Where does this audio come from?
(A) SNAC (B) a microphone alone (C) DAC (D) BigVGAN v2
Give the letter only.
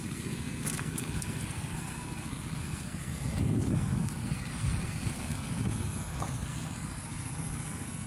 A